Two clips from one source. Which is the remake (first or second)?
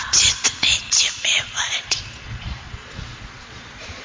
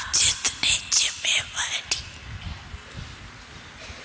first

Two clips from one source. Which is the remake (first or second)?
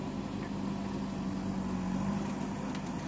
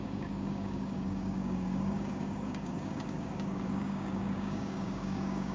second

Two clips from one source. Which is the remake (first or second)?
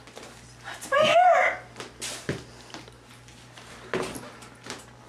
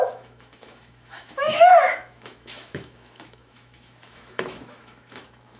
second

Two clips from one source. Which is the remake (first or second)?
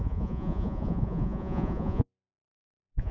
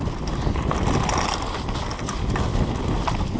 first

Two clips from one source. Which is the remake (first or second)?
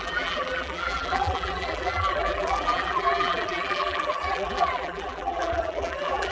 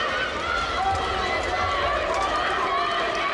first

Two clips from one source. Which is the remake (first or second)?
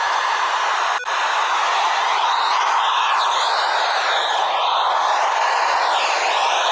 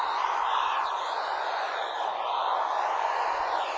second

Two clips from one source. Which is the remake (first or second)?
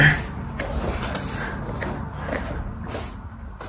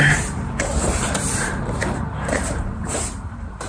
second